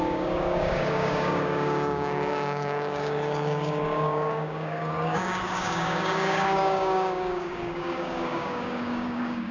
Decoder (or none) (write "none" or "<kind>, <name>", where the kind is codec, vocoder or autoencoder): codec, DAC